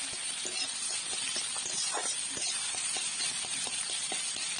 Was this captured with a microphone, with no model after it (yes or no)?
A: yes